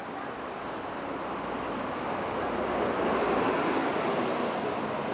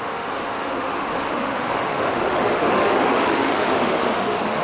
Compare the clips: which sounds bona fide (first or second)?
first